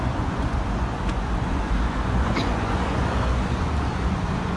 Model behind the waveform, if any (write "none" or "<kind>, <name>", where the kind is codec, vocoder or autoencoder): vocoder, Vocos